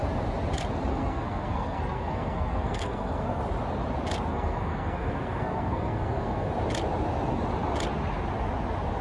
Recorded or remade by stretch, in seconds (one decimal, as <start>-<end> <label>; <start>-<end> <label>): 0.0-0.9 recorded; 0.9-3.4 remade; 3.4-4.3 recorded; 4.3-6.5 remade; 6.5-9.0 recorded